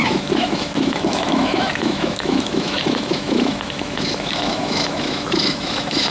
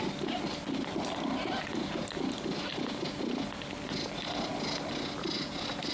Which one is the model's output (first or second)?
first